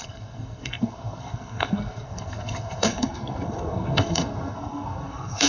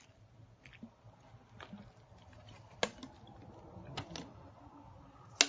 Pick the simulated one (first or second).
first